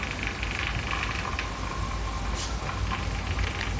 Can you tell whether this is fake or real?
real